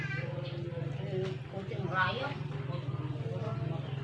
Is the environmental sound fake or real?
real